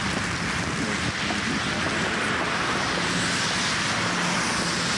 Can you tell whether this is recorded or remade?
recorded